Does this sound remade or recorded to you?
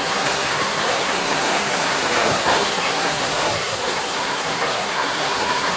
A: remade